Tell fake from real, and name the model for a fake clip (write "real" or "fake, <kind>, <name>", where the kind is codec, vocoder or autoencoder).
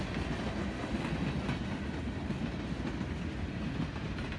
real